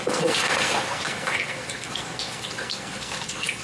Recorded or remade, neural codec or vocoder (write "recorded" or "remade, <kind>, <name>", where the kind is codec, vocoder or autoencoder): remade, codec, SNAC